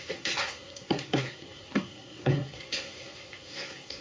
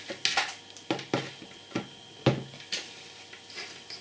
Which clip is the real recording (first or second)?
second